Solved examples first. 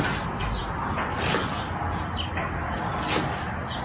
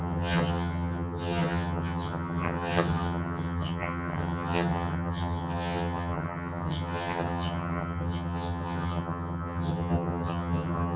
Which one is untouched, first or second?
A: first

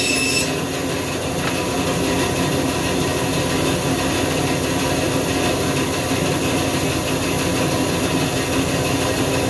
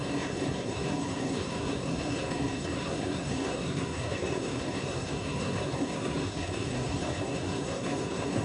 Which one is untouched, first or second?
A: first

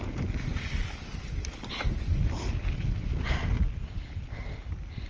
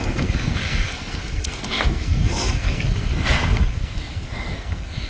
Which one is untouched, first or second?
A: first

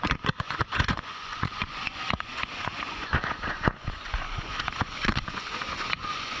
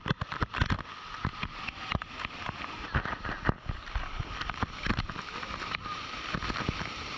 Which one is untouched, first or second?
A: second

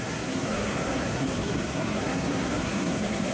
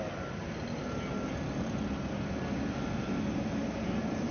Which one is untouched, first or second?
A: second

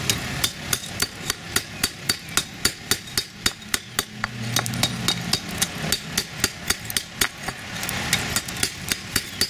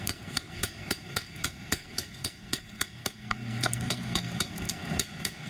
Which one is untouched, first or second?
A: first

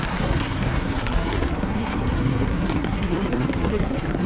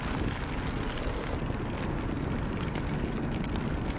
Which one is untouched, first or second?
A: second